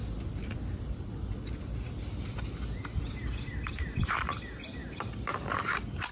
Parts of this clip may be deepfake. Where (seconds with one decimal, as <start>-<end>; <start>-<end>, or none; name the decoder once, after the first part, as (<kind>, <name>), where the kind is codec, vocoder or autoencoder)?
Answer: none